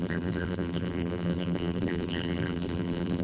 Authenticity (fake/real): fake